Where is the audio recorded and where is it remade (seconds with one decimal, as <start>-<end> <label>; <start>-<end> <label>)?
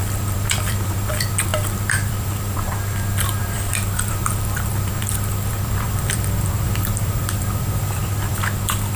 0.0-9.0 remade